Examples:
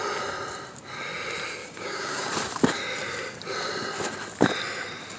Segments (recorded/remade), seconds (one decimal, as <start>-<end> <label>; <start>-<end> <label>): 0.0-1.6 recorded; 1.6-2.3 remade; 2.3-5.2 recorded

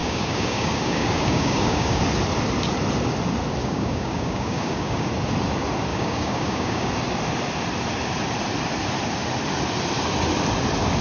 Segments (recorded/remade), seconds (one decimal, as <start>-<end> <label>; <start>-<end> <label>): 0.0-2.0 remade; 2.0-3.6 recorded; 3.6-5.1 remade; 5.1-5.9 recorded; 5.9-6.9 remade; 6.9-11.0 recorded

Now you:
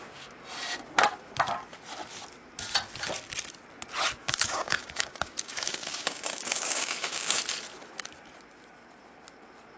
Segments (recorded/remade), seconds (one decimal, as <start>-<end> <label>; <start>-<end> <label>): 0.0-4.2 recorded; 4.2-7.4 remade; 7.4-9.8 recorded

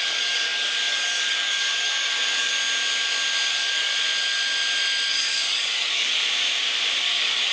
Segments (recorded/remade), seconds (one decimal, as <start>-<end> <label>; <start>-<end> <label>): 0.0-2.5 remade; 2.5-3.5 recorded; 3.5-3.9 remade; 3.9-5.1 recorded; 5.1-6.2 remade; 6.2-7.0 recorded; 7.0-7.5 remade

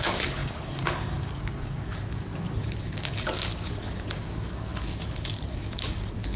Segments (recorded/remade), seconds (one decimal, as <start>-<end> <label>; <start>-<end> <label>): 0.0-6.4 remade

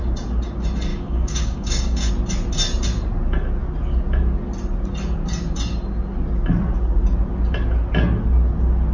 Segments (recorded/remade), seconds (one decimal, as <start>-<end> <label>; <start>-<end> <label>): 0.0-0.9 recorded; 0.9-2.1 remade; 2.1-8.9 recorded

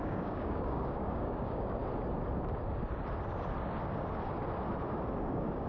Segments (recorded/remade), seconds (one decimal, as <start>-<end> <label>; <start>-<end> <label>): 0.0-1.8 remade; 1.8-5.2 recorded; 5.2-5.7 remade